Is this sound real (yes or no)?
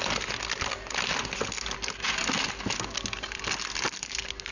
yes